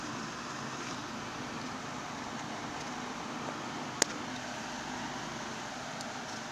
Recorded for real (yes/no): yes